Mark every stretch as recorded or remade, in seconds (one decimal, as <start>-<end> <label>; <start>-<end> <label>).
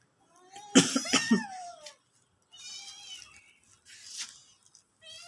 0.0-5.3 recorded